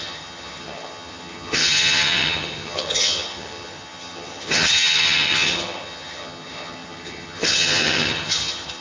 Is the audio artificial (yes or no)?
yes